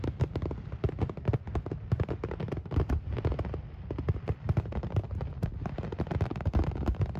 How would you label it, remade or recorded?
recorded